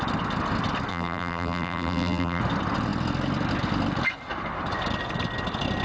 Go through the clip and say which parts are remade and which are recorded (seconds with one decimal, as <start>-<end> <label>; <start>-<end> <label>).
0.0-0.9 recorded; 0.9-2.4 remade; 2.4-5.8 recorded

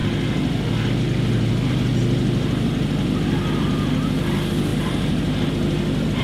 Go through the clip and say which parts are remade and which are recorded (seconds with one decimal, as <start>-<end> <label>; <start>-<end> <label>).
0.0-4.7 recorded; 4.7-5.5 remade; 5.5-6.2 recorded

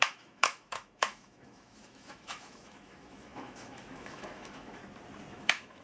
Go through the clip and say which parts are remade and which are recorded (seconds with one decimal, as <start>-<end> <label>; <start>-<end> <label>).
0.0-4.8 remade; 4.8-5.3 recorded; 5.3-5.8 remade

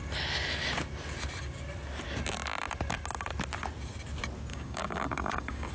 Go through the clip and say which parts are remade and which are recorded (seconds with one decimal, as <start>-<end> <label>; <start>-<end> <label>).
0.0-4.5 recorded; 4.5-5.7 remade